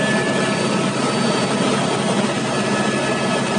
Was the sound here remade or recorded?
recorded